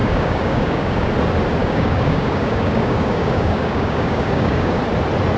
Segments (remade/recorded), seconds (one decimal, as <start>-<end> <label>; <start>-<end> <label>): 0.0-1.1 remade; 1.1-1.6 recorded; 1.6-4.8 remade; 4.8-5.4 recorded